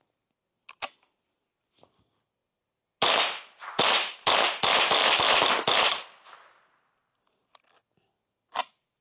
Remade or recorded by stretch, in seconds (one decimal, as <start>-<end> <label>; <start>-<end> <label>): 0.0-9.0 recorded